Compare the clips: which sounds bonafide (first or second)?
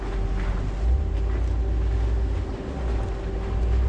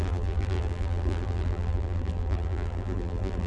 first